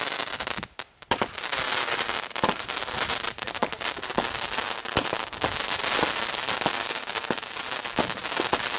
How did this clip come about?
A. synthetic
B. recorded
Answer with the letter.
B